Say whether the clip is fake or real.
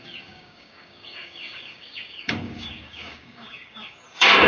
fake